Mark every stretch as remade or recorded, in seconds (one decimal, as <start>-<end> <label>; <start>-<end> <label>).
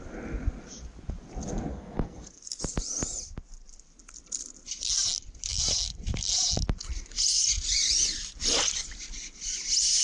0.0-1.7 recorded; 1.7-2.5 remade; 2.5-10.0 recorded